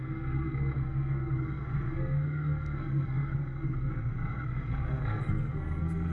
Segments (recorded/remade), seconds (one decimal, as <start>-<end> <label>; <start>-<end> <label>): 0.0-6.1 remade